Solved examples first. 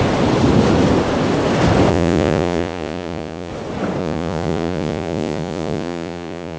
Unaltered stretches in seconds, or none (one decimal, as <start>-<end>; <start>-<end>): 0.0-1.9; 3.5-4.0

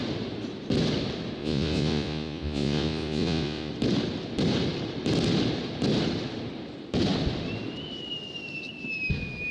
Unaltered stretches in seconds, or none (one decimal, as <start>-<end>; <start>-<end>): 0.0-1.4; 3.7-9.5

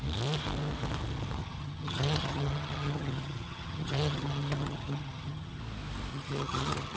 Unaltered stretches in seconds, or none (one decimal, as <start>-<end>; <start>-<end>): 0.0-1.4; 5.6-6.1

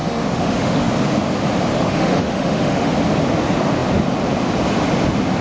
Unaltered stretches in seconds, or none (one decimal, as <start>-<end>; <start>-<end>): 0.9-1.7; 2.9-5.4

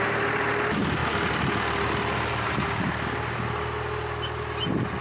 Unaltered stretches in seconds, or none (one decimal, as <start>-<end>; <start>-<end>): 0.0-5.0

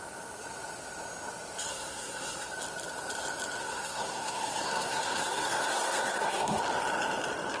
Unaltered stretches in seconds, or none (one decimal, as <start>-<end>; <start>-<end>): 0.0-1.7; 2.5-3.6; 6.6-7.6